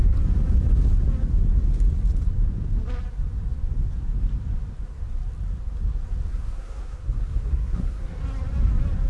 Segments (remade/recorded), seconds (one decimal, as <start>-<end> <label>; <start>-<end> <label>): 0.0-6.3 recorded; 6.3-8.2 remade; 8.2-9.1 recorded